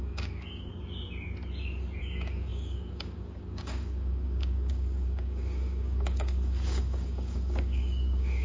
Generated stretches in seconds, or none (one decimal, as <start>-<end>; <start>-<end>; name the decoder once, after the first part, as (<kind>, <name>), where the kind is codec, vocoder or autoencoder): 0.0-0.7 (codec, DAC); 2.0-8.4